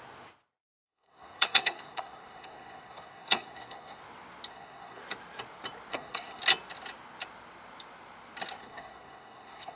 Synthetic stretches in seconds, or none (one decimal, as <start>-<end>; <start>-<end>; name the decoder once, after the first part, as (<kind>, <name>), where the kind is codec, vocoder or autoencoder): 0.7-4.0 (codec, SNAC); 4.5-5.0; 5.9-6.4; 8.6-9.8